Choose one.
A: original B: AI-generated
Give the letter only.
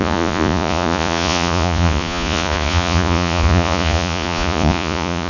B